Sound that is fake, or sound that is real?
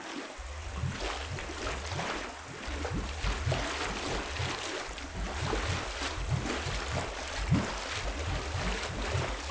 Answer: real